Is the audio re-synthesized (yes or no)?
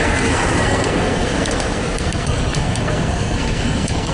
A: yes